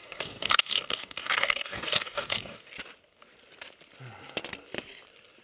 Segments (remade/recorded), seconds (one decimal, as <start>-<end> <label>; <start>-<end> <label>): 0.0-2.7 remade; 2.7-5.4 recorded